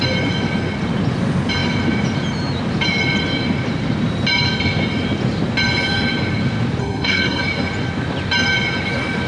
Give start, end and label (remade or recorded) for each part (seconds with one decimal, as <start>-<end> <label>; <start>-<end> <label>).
0.0-6.8 recorded; 6.8-7.4 remade; 7.4-9.3 recorded